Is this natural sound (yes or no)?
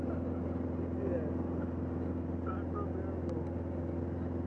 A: yes